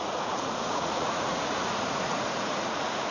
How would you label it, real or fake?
fake